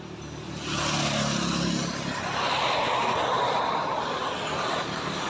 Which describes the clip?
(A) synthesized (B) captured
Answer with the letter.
B